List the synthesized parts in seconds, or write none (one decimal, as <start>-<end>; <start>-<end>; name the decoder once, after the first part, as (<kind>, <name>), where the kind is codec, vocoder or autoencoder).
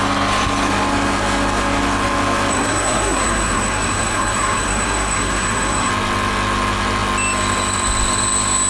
2.5-5.9 (codec, SNAC)